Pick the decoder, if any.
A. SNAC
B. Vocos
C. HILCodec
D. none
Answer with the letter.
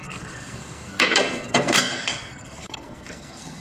A